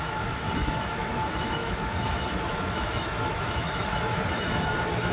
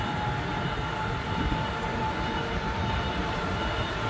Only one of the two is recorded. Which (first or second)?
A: second